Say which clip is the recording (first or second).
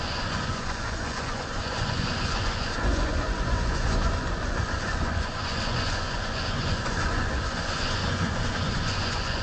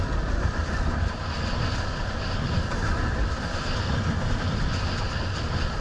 second